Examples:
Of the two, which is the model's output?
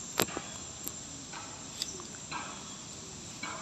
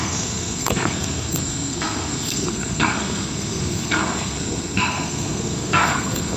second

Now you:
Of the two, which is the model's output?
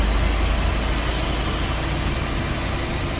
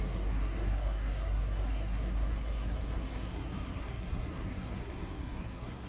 second